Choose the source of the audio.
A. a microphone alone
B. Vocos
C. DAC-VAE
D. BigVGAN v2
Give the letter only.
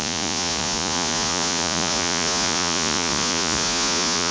B